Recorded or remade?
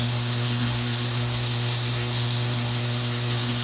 remade